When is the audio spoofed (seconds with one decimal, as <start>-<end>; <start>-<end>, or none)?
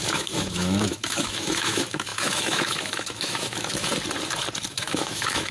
0.0-3.9; 4.7-5.5